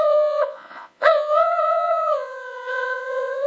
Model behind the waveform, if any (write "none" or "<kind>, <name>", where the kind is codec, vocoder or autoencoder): vocoder, Vocos